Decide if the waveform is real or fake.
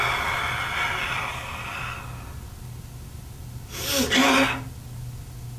real